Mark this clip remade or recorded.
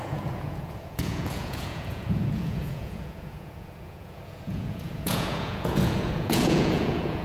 remade